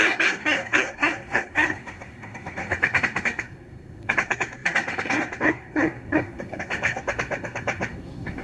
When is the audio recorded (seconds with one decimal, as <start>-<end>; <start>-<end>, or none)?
none